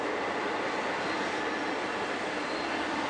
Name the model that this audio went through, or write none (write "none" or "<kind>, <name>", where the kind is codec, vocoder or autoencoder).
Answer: none